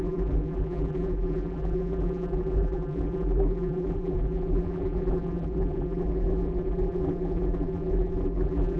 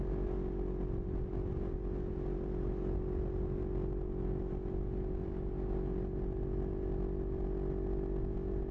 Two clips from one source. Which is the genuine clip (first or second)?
second